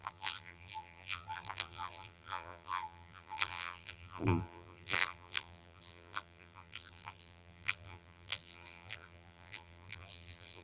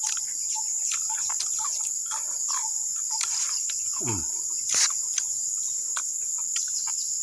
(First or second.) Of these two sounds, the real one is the second